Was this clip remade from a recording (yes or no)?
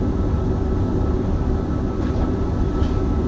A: no